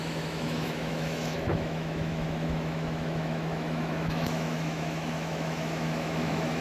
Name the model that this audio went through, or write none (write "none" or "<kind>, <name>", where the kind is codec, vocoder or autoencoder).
autoencoder, DAC-VAE